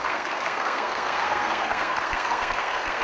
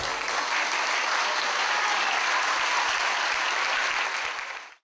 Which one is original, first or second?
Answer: second